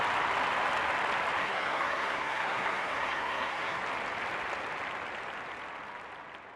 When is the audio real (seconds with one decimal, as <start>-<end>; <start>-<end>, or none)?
0.0-1.4; 3.8-6.6